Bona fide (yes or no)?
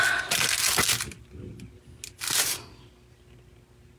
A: yes